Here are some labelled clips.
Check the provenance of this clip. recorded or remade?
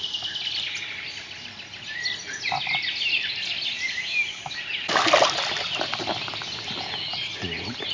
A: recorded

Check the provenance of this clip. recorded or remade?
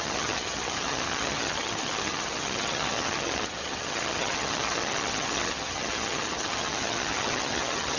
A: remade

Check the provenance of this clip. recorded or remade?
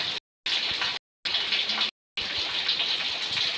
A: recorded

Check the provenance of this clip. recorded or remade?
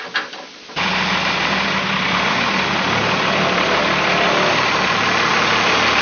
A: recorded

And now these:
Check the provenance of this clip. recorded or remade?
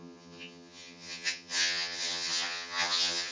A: remade